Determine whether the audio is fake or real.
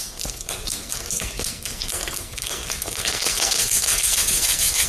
fake